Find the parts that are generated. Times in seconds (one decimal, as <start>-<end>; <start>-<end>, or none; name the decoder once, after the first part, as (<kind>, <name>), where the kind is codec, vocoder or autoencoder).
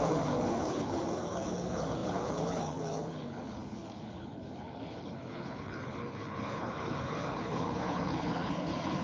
0.0-9.0 (codec, HILCodec)